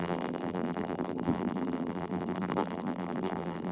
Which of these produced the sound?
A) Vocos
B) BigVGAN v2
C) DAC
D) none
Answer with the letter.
B